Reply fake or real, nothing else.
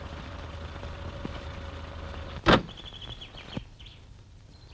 fake